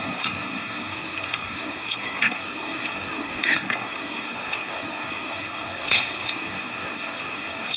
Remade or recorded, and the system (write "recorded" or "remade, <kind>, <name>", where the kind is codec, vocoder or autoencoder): remade, codec, SNAC